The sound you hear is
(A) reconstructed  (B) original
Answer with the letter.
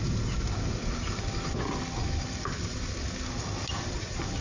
B